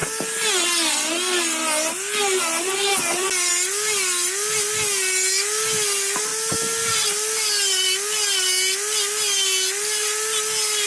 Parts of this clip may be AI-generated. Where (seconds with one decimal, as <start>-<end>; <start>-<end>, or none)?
none